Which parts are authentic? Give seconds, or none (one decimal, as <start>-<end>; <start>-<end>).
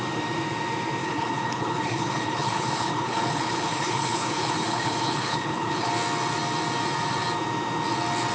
0.0-1.0; 5.9-8.3